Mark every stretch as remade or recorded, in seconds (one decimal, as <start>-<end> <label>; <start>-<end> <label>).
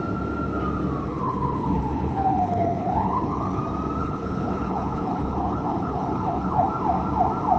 0.0-1.1 recorded; 1.1-3.6 remade; 3.6-4.0 recorded; 4.0-6.7 remade; 6.7-7.6 recorded